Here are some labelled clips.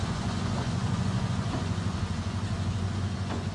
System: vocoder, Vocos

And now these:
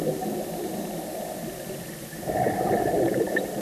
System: none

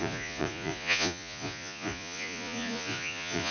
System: vocoder, Vocos